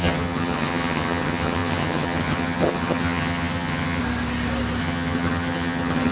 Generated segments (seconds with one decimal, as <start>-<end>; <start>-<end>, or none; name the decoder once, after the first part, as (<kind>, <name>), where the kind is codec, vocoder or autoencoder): 0.0-4.0 (vocoder, HiFi-GAN); 4.8-6.1